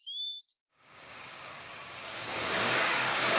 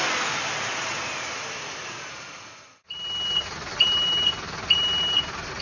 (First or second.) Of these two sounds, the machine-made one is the first